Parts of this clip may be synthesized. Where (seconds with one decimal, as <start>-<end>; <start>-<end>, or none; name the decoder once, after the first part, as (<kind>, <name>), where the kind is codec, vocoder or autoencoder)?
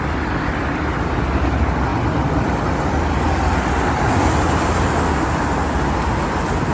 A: none